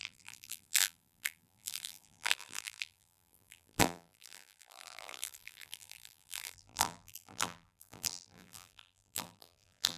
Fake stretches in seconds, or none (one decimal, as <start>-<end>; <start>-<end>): 0.0-10.0

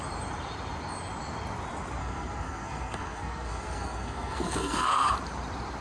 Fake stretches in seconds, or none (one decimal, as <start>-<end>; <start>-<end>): 2.0-5.1